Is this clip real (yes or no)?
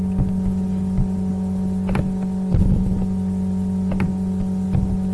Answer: yes